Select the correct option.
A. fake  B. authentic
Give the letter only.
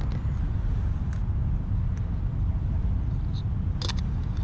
B